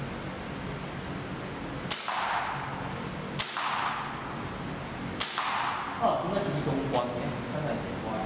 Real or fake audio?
real